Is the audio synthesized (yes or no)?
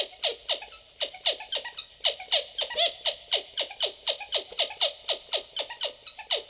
no